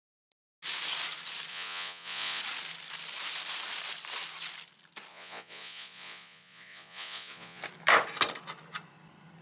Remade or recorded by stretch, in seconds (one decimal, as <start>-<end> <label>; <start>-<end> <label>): 0.0-1.5 recorded; 1.5-2.4 remade; 2.4-5.1 recorded; 5.1-7.6 remade; 7.6-9.4 recorded